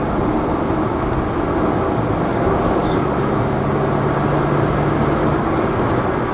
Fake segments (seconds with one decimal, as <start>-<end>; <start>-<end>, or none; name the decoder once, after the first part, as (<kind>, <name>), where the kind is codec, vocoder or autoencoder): 2.3-3.2 (codec, DAC); 5.2-5.8